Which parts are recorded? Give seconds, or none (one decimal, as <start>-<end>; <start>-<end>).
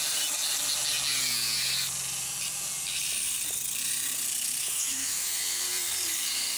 0.0-4.6; 5.4-6.6